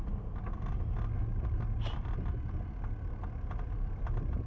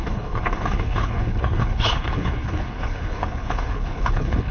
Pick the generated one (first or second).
second